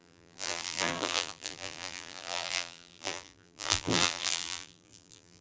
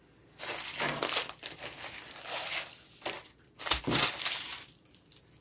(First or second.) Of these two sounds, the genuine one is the second